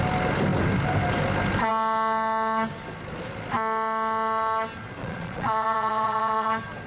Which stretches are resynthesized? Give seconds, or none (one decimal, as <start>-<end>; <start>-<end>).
5.0-6.5